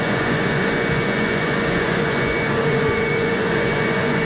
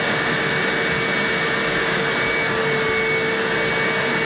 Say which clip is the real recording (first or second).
second